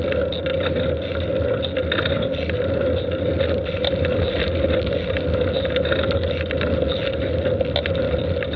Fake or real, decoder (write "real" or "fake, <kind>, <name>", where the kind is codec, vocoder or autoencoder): real